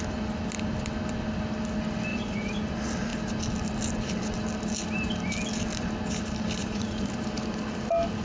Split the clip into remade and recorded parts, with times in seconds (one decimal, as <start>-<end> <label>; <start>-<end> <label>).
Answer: 0.0-2.1 recorded; 2.1-2.6 remade; 2.6-6.6 recorded; 6.6-7.1 remade; 7.1-8.2 recorded